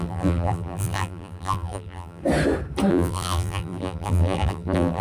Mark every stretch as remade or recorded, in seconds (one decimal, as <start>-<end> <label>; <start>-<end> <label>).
0.0-2.2 remade; 2.2-2.9 recorded; 2.9-5.0 remade